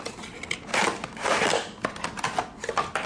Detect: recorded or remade recorded